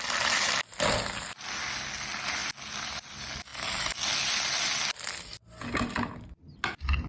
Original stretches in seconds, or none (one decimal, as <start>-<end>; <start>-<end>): 0.0-7.1